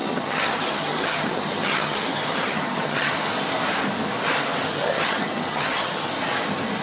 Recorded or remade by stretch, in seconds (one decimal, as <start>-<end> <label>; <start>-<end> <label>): 0.0-3.1 remade; 3.1-4.7 recorded; 4.7-6.1 remade; 6.1-6.8 recorded